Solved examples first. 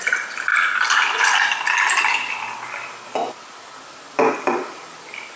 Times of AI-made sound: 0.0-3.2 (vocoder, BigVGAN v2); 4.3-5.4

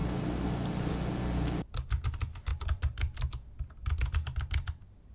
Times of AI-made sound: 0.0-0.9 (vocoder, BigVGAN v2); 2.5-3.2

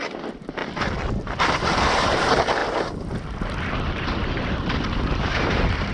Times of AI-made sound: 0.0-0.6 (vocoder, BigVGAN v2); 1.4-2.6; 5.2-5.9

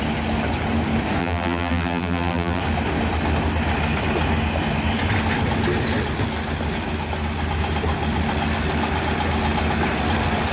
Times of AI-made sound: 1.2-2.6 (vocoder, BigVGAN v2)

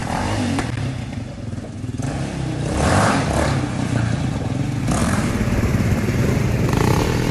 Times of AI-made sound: 0.0-3.2 (vocoder, BigVGAN v2); 5.0-6.3

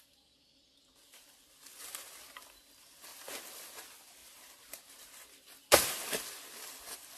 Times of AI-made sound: 1.7-2.2 (vocoder, BigVGAN v2); 4.2-4.8